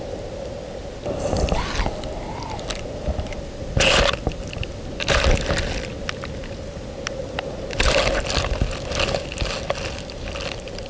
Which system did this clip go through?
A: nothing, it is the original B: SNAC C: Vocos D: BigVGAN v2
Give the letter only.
A